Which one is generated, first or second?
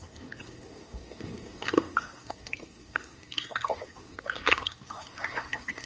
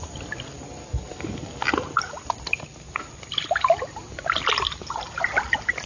first